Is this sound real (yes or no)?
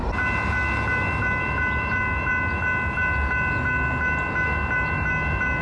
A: yes